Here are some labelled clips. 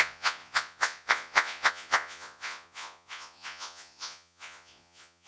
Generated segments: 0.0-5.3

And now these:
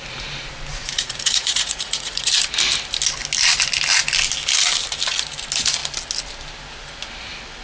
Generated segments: 0.7-2.3

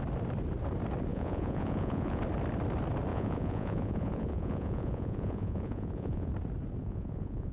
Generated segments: 1.1-2.2; 3.1-6.3; 6.8-7.5